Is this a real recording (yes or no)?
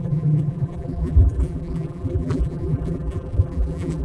no